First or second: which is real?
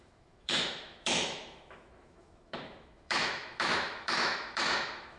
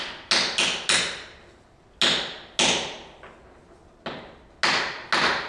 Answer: second